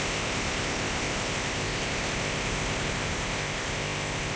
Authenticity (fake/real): fake